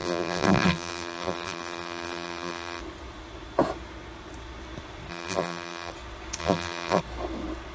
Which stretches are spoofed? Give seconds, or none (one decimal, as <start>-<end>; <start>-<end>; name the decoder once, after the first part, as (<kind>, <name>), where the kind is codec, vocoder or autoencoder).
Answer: 0.0-2.8 (vocoder, BigVGAN v2); 5.1-5.9; 6.4-7.0